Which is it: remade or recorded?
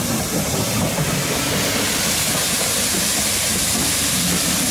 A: recorded